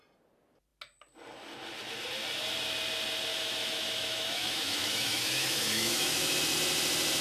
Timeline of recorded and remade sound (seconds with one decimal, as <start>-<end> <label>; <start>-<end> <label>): 0.0-3.3 recorded; 3.3-6.4 remade; 6.4-7.2 recorded